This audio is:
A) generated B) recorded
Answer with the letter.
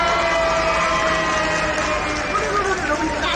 B